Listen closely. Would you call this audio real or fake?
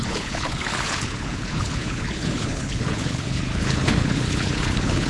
fake